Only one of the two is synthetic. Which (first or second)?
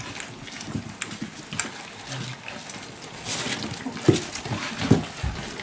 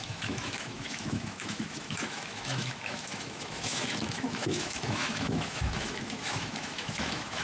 second